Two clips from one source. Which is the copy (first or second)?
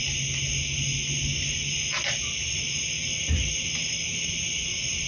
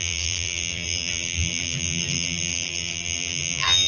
second